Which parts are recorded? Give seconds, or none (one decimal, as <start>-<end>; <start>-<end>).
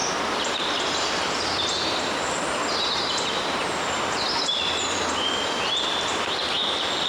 0.0-1.1